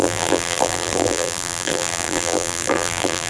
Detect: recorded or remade remade